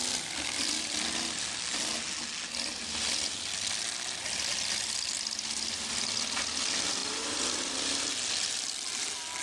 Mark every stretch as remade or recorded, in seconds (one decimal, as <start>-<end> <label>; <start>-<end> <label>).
0.0-9.4 recorded